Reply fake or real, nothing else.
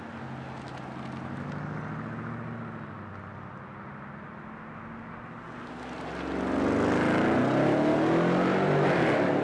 real